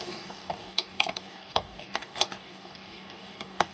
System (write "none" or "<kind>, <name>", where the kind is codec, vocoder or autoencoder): codec, DAC